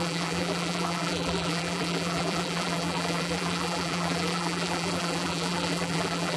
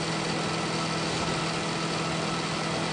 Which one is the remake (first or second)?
first